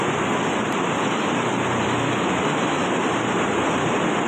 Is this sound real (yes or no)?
yes